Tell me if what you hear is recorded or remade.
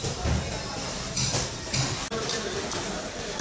recorded